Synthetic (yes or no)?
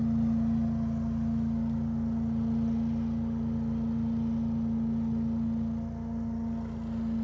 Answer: no